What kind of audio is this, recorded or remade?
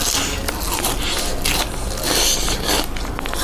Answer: recorded